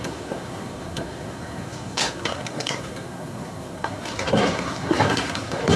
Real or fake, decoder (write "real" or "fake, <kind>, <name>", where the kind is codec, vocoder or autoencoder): fake, codec, SNAC